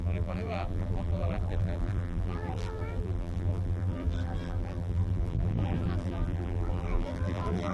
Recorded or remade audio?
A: remade